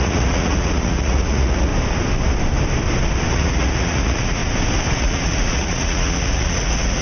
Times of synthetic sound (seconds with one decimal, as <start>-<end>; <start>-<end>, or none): 0.0-1.7; 3.3-4.4; 5.0-7.0